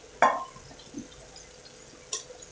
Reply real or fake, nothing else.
real